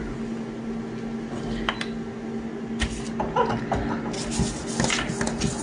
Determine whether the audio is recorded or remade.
recorded